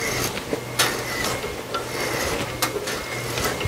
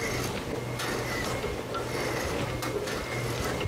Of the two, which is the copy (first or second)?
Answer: second